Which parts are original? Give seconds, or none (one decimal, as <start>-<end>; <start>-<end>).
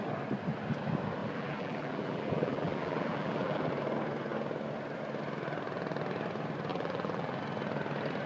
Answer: 0.0-1.2; 3.7-6.7; 7.4-8.3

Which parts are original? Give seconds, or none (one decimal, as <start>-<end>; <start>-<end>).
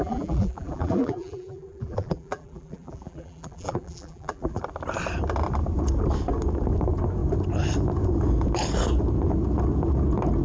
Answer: 4.6-10.4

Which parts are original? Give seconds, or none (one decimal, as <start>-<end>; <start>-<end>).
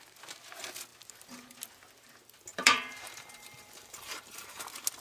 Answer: 0.0-2.5; 4.6-5.0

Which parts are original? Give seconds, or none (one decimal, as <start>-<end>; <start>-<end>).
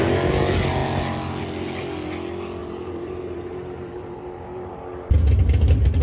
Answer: 0.0-2.6; 4.7-6.0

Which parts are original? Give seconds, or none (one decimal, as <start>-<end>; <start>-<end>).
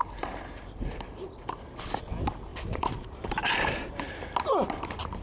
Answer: 0.0-2.5; 4.0-5.2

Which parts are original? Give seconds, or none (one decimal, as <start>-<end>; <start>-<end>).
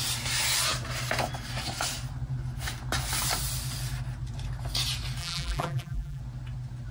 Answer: 0.0-5.2; 6.2-6.9